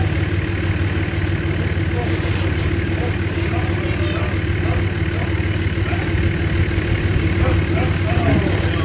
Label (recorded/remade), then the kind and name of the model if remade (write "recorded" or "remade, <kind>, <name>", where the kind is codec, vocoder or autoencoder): recorded